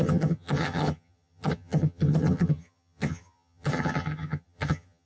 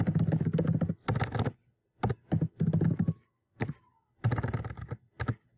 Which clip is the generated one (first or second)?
first